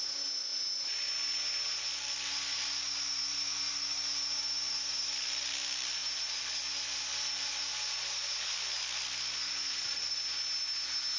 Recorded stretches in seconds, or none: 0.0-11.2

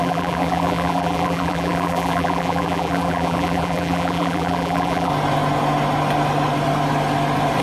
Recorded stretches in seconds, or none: 5.1-7.6

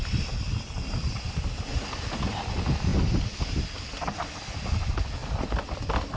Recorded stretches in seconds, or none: 0.0-6.2

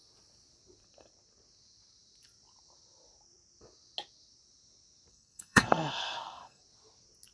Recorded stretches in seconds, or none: 0.0-5.1; 6.6-7.3

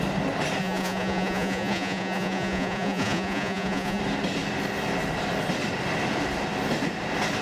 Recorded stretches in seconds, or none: 0.0-0.6; 4.0-7.4

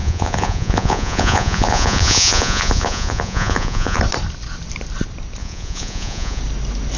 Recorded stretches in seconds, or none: 4.0-5.4; 6.4-7.0

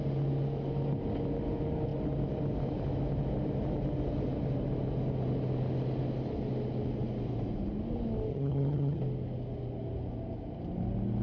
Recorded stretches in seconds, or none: 0.0-8.3; 9.0-11.2